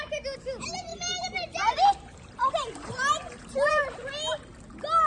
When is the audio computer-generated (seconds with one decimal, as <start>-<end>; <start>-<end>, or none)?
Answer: 0.9-3.7